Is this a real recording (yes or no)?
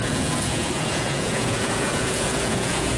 no